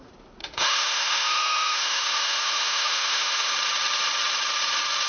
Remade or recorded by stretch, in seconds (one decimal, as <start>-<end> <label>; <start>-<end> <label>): 0.0-0.4 recorded; 0.4-3.5 remade; 3.5-5.1 recorded

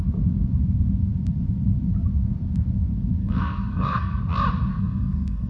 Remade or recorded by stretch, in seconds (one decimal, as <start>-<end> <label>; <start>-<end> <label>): 0.0-3.2 recorded; 3.2-4.2 remade; 4.2-4.7 recorded; 4.7-5.5 remade

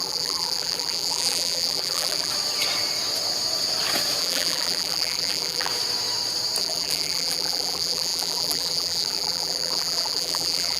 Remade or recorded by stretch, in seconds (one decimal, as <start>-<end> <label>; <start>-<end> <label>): 0.0-2.3 remade; 2.3-4.2 recorded; 4.2-5.7 remade; 5.7-6.6 recorded; 6.6-10.8 remade

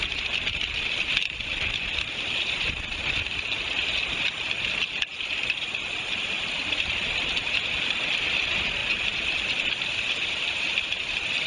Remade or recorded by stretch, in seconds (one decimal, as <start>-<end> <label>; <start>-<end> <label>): 0.0-5.1 recorded; 5.1-5.8 remade; 5.8-8.8 recorded; 8.8-11.1 remade; 11.1-11.5 recorded

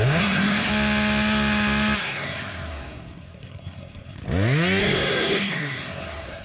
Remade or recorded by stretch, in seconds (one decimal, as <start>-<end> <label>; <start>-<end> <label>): 0.0-0.7 remade; 0.7-2.0 recorded; 2.0-4.2 remade; 4.2-4.8 recorded; 4.8-6.4 remade

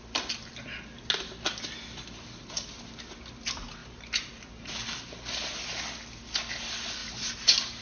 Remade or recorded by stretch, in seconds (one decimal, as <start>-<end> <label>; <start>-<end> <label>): 0.0-3.8 recorded; 3.8-4.3 remade; 4.3-7.0 recorded; 7.0-7.8 remade